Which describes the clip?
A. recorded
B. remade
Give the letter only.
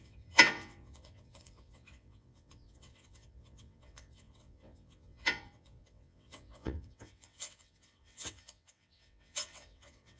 B